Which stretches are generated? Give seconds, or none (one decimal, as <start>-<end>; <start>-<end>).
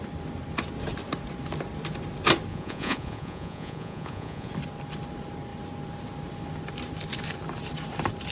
2.5-4.5